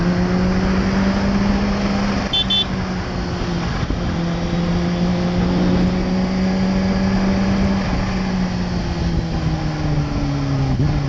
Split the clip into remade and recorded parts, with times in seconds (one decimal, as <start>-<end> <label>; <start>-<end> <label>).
0.0-11.1 recorded